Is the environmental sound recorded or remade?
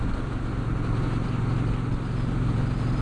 recorded